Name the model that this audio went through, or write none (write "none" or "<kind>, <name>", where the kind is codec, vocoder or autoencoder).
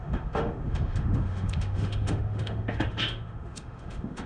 autoencoder, DAC-VAE